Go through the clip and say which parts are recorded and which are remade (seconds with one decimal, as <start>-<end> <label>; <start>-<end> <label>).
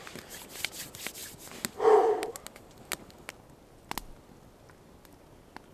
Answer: 0.0-5.7 recorded